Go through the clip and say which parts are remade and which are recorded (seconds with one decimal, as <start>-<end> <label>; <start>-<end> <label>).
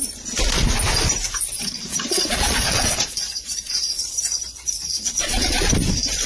0.0-1.9 recorded; 1.9-5.7 remade; 5.7-6.3 recorded